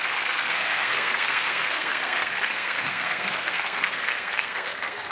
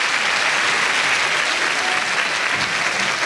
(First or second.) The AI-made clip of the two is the first